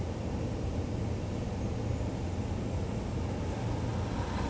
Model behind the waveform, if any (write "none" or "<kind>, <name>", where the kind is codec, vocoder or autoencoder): none